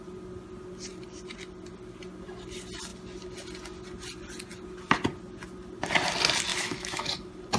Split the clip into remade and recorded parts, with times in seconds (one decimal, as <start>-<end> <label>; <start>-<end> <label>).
0.0-6.5 recorded; 6.5-7.1 remade; 7.1-7.6 recorded